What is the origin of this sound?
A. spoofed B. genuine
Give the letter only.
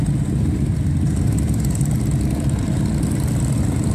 B